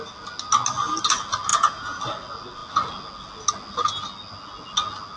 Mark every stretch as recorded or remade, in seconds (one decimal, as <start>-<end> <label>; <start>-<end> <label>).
0.0-1.5 recorded; 1.5-2.0 remade; 2.0-5.2 recorded